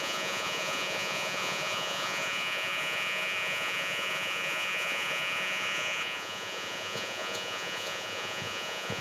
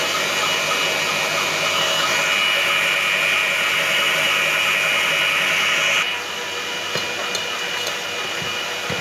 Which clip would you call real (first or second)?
second